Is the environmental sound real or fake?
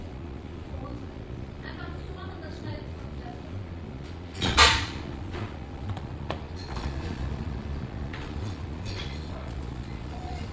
fake